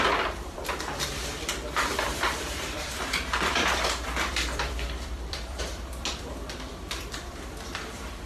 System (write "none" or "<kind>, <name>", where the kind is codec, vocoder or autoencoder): vocoder, BigVGAN v2